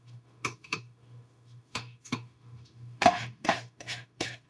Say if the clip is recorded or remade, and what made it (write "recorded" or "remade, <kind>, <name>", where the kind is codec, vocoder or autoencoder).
remade, autoencoder, DAC-VAE